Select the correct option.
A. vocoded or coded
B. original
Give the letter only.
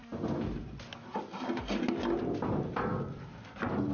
B